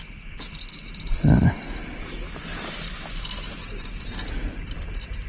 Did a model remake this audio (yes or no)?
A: no